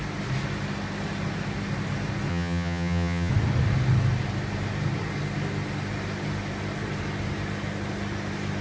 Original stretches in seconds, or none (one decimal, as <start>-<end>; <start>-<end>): 0.0-2.3; 3.3-8.6